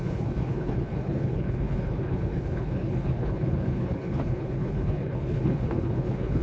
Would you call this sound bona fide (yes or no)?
no